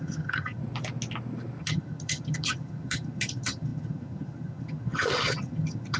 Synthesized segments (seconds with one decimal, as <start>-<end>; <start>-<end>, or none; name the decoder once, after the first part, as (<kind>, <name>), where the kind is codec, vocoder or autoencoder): 0.0-0.6 (vocoder, HiFi-GAN); 1.6-6.0